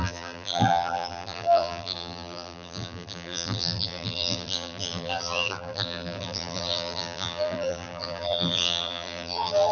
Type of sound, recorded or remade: remade